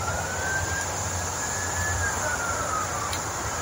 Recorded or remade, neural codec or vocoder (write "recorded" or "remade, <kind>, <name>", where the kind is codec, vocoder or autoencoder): recorded